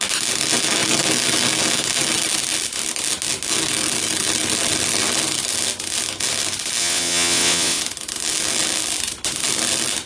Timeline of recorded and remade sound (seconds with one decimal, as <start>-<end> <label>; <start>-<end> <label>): 0.0-6.8 recorded; 6.8-7.8 remade; 7.8-10.1 recorded